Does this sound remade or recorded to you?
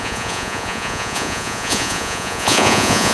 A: remade